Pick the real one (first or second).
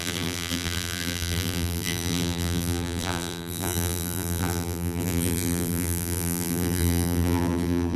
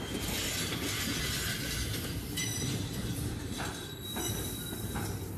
second